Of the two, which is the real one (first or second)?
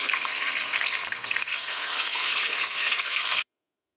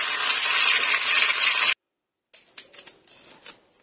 second